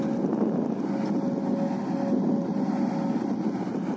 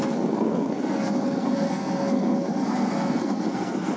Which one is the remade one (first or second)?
second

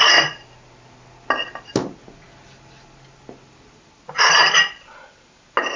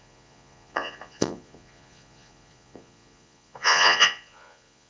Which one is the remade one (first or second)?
second